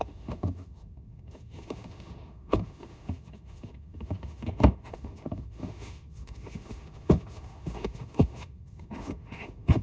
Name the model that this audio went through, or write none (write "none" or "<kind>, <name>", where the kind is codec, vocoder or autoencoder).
autoencoder, DAC-VAE